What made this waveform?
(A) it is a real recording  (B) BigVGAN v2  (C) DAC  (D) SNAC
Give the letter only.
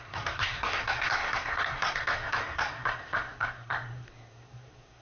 D